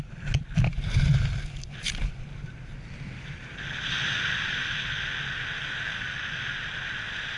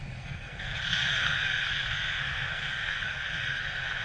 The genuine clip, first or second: first